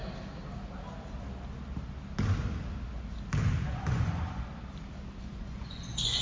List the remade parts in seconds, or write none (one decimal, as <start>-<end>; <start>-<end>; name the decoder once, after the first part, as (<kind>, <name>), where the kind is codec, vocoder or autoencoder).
3.7-4.5 (vocoder, Vocos); 5.2-6.2